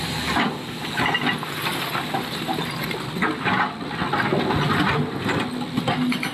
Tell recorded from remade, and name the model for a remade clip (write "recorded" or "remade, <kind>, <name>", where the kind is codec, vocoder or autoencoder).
recorded